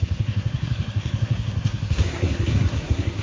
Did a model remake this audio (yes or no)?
yes